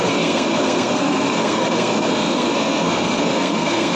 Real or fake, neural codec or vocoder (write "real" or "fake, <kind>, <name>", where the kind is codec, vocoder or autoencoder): fake, codec, SNAC